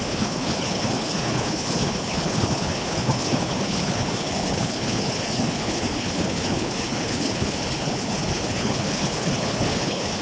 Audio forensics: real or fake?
fake